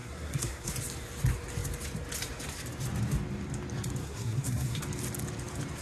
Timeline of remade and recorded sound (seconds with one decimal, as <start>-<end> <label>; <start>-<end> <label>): 0.0-0.7 remade; 0.7-4.0 recorded; 4.0-4.8 remade; 4.8-5.8 recorded